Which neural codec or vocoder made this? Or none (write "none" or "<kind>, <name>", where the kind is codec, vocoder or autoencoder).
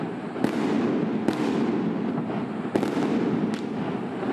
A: none